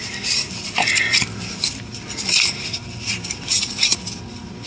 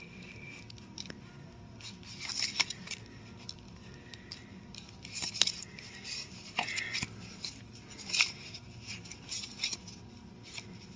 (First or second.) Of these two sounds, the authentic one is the second